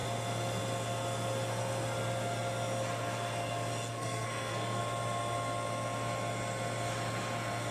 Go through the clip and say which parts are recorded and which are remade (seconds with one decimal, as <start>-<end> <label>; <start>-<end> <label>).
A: 0.0-3.9 recorded; 3.9-4.8 remade; 4.8-7.7 recorded

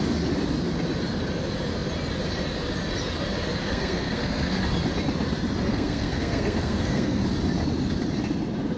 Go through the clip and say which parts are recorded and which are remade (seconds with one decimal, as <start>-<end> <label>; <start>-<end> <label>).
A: 0.0-3.6 recorded; 3.6-4.6 remade; 4.6-5.7 recorded; 5.7-7.2 remade; 7.2-8.8 recorded

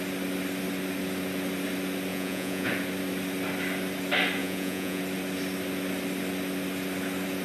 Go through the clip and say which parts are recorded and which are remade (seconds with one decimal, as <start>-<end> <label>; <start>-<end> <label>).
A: 0.0-2.1 recorded; 2.1-2.7 remade; 2.7-4.4 recorded; 4.4-5.0 remade; 5.0-7.4 recorded

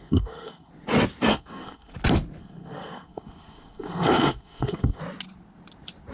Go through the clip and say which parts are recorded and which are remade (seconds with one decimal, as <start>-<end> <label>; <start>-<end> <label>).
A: 0.0-0.7 remade; 0.7-1.3 recorded; 1.3-1.9 remade; 1.9-2.4 recorded; 2.4-5.0 remade; 5.0-6.1 recorded

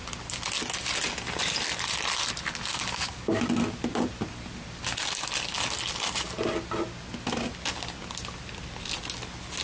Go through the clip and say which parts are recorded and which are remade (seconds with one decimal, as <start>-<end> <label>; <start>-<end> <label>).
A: 0.0-2.7 recorded; 2.7-3.4 remade; 3.4-9.6 recorded

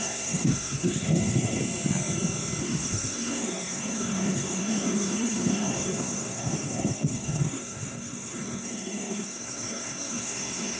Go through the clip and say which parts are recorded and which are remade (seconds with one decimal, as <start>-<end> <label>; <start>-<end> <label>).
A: 0.0-1.6 remade; 1.6-2.6 recorded; 2.6-10.8 remade